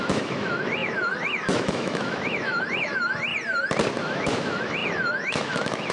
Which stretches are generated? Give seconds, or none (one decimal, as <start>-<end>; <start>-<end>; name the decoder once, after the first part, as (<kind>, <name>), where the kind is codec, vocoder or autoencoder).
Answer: 0.0-3.3 (autoencoder, DAC-VAE); 4.0-5.9